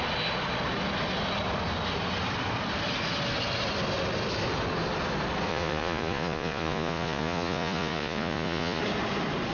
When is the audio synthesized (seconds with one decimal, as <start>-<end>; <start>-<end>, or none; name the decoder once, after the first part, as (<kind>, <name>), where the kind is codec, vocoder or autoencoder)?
5.5-8.8 (vocoder, Vocos)